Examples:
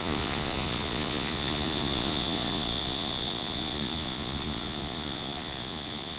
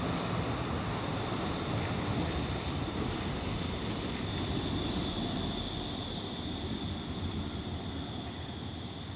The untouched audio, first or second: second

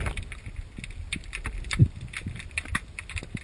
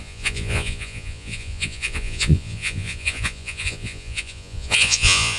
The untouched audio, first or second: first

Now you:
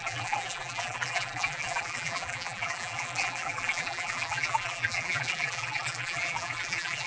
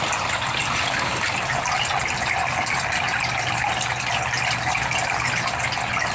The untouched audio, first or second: second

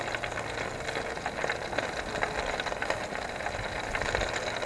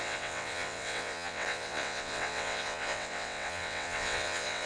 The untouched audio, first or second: first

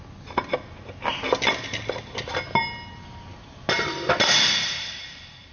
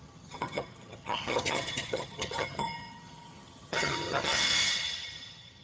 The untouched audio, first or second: first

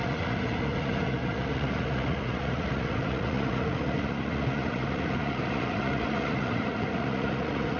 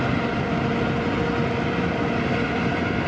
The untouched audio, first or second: second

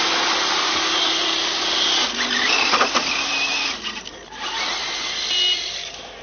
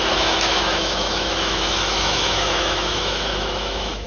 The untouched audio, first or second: first